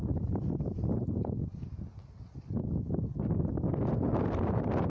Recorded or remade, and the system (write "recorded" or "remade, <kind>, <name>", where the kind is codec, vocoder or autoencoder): recorded